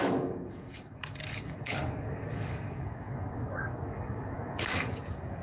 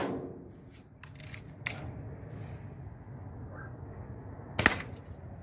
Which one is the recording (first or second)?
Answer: second